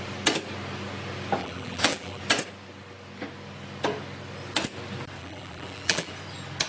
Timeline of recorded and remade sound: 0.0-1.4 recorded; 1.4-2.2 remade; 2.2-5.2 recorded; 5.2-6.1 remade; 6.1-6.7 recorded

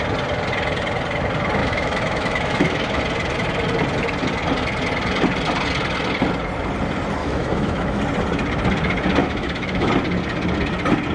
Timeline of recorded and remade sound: 0.0-1.6 recorded; 1.6-3.0 remade; 3.0-7.2 recorded; 7.2-8.0 remade; 8.0-9.2 recorded; 9.2-9.9 remade; 9.9-11.1 recorded

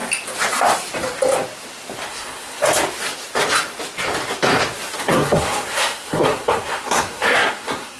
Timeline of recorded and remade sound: 0.0-2.1 recorded; 2.1-2.5 remade; 2.5-5.0 recorded; 5.0-8.0 remade

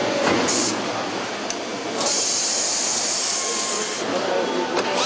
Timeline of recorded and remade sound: 0.0-0.7 remade; 0.7-5.1 recorded

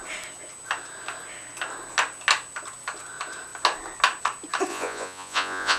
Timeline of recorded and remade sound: 0.0-4.7 recorded; 4.7-5.8 remade

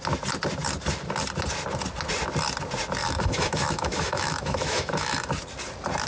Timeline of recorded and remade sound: 0.0-3.0 recorded; 3.0-5.3 remade; 5.3-6.1 recorded

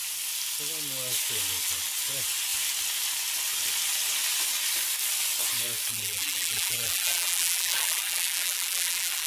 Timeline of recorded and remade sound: 0.0-5.9 recorded; 5.9-9.3 remade

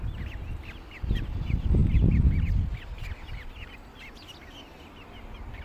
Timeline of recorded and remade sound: 0.0-5.6 recorded